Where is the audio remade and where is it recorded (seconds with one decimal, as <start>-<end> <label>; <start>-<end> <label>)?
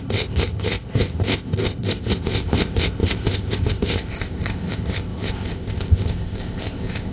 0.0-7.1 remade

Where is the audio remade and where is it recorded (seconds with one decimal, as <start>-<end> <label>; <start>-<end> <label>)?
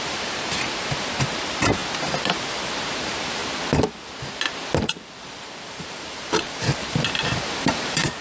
0.0-1.8 remade; 1.8-2.5 recorded; 2.5-3.4 remade; 3.4-5.7 recorded; 5.7-8.2 remade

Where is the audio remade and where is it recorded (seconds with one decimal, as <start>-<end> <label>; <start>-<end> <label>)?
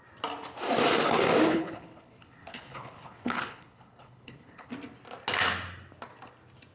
0.0-1.5 recorded; 1.5-4.7 remade; 4.7-6.7 recorded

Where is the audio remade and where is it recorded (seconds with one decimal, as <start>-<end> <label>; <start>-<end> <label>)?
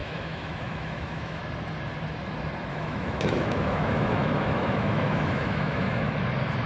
0.0-1.4 remade; 1.4-2.7 recorded; 2.7-6.2 remade; 6.2-6.7 recorded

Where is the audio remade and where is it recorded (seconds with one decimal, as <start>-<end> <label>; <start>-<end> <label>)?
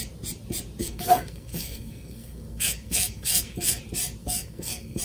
0.0-0.8 recorded; 0.8-3.8 remade; 3.8-4.2 recorded; 4.2-5.0 remade